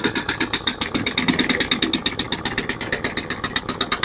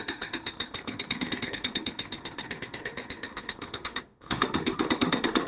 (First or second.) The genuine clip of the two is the first